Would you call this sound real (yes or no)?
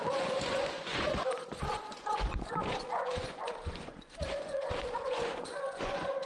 no